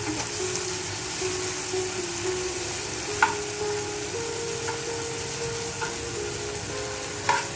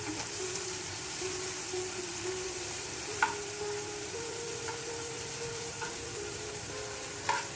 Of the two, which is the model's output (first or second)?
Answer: second